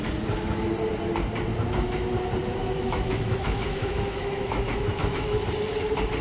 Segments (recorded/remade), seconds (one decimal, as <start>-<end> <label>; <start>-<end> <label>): 0.0-2.6 recorded; 2.6-5.4 remade; 5.4-6.2 recorded